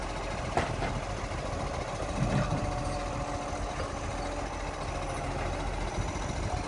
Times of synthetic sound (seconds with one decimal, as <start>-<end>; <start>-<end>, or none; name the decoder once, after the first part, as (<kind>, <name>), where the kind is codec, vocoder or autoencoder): none